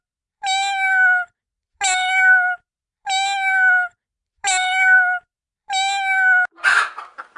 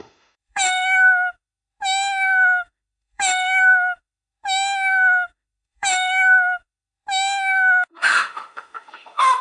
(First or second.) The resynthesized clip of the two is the second